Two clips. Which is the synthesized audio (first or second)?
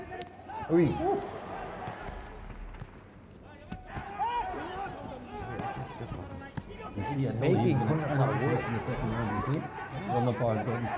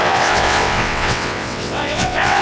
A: second